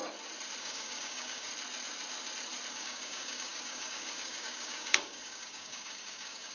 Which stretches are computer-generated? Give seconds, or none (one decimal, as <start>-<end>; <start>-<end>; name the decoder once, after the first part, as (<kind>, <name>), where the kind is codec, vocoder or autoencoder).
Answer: 0.6-1.5 (codec, DAC); 2.7-6.5